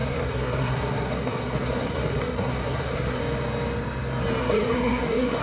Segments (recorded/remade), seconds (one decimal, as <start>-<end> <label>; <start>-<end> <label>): 0.0-3.2 remade; 3.2-4.4 recorded; 4.4-5.4 remade